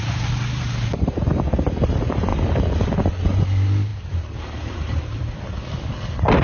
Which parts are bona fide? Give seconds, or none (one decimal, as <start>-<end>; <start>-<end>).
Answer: 0.0-2.3; 3.4-3.9; 5.7-6.4